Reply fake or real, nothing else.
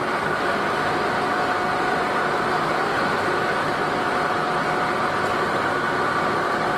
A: real